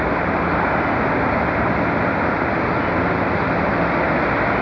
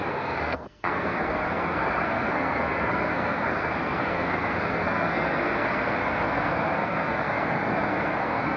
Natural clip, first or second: first